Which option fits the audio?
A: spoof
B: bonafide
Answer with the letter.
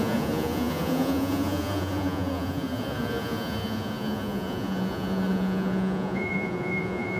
A